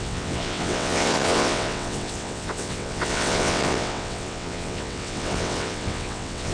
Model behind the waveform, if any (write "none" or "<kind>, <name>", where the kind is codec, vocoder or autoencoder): vocoder, WaveNeXt